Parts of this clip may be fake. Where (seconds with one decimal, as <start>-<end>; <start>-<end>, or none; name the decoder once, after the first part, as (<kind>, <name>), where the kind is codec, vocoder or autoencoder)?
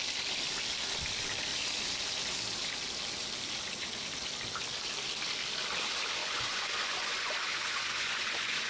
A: 6.2-8.7 (vocoder, Vocos)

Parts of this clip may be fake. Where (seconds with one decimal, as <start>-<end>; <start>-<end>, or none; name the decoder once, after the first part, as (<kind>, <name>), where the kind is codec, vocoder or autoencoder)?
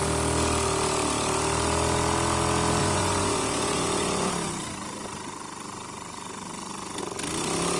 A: 2.8-4.3 (vocoder, Vocos)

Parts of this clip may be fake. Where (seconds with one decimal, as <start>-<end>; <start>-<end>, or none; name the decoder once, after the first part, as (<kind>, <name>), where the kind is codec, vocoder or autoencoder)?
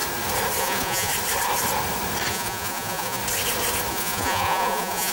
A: 0.6-1.1 (vocoder, Vocos); 2.3-3.2; 3.9-5.1